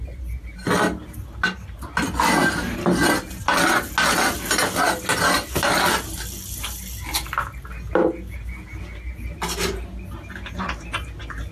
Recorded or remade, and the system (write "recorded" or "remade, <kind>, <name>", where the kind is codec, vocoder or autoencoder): recorded